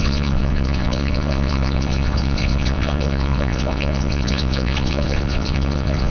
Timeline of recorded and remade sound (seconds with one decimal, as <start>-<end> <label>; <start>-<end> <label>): 0.0-6.1 remade